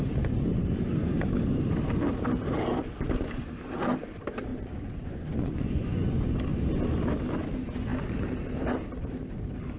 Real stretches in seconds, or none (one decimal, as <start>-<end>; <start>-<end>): 0.0-4.5; 6.3-9.8